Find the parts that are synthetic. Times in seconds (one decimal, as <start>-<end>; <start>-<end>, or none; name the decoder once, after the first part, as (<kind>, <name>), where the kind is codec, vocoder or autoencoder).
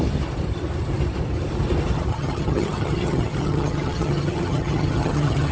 2.1-5.5 (vocoder, HiFi-GAN)